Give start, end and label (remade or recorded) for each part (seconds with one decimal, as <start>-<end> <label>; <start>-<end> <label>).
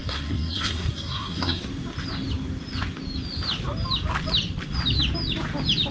0.0-1.6 remade; 1.6-5.9 recorded